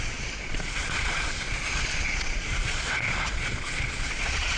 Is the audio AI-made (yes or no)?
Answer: yes